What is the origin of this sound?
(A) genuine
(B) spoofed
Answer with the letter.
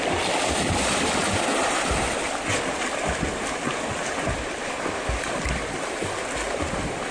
B